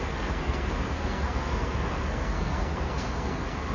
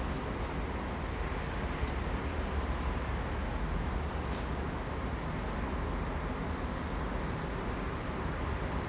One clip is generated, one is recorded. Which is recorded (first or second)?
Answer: second